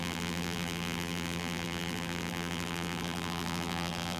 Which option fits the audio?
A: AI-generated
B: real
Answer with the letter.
A